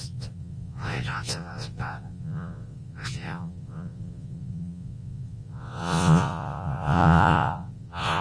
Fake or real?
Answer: fake